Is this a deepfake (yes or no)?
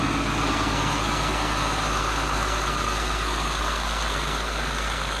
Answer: yes